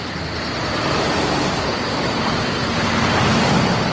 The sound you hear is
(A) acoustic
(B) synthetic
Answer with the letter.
A